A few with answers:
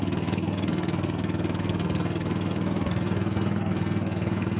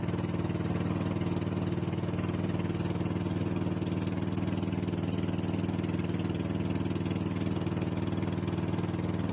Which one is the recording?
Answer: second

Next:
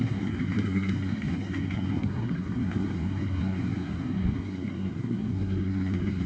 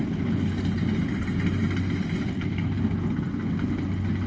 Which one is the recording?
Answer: second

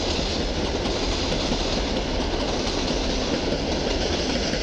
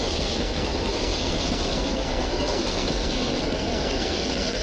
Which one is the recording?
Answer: first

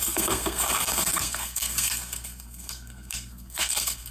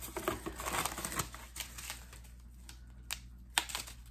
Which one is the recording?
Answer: second